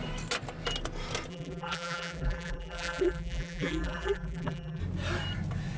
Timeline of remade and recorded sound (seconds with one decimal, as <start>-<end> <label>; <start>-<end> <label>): 0.0-1.3 recorded; 1.3-4.8 remade; 4.8-5.8 recorded